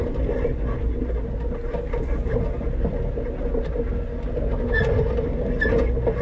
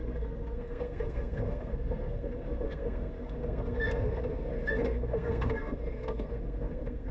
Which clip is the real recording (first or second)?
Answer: first